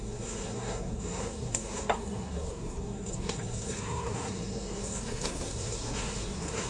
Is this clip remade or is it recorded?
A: remade